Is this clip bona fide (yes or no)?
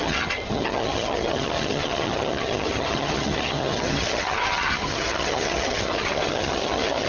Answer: no